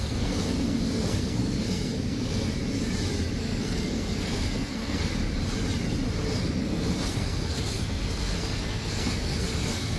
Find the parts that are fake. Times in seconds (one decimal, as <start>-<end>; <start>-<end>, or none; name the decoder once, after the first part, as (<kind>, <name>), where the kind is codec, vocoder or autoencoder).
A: 0.0-2.6 (codec, SNAC); 3.4-5.1; 6.4-10.0